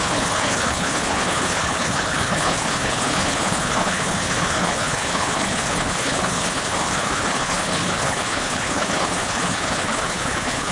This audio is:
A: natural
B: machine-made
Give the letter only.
B